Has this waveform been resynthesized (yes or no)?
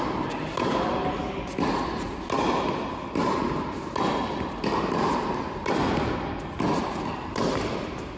no